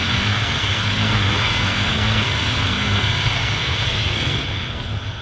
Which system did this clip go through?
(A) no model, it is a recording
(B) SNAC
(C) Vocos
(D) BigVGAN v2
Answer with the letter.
B